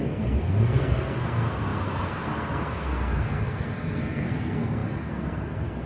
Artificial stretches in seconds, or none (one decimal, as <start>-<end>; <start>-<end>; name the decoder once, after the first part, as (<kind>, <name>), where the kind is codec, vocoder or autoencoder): 0.0-5.9 (codec, SNAC)